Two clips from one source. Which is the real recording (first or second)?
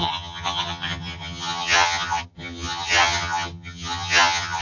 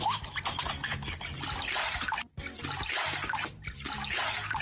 second